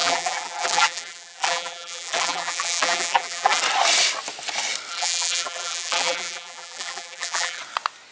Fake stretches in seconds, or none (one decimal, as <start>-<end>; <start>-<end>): 0.0-3.6; 4.9-7.6